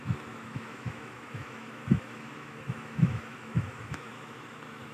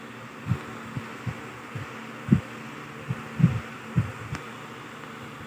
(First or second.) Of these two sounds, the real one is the second